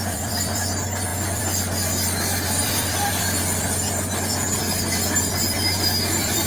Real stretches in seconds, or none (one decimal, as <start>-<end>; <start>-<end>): none